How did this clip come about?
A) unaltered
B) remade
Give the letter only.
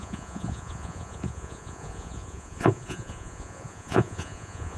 B